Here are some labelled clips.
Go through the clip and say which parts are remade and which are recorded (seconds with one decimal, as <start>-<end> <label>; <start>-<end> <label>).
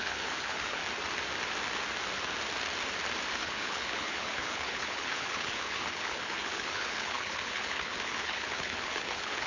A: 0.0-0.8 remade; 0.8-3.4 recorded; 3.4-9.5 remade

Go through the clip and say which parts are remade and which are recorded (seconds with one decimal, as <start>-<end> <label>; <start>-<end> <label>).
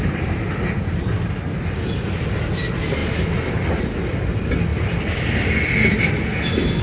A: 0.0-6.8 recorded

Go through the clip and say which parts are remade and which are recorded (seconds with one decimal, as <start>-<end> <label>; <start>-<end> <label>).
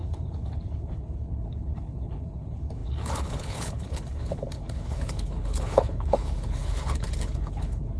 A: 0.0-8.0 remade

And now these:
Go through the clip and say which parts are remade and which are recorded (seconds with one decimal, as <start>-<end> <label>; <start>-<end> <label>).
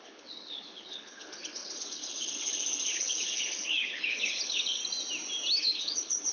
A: 0.0-4.8 remade; 4.8-5.6 recorded; 5.6-6.3 remade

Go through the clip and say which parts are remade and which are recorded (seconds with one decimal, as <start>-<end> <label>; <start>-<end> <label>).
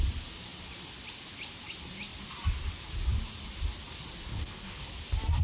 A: 0.0-4.3 recorded; 4.3-4.9 remade; 4.9-5.4 recorded